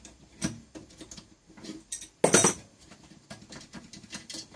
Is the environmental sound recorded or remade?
recorded